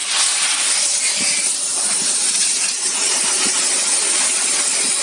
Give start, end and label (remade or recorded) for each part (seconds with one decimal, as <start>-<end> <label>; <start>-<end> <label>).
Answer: 0.0-5.0 recorded